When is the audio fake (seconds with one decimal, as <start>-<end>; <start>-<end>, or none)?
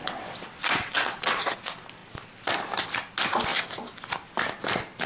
0.0-1.4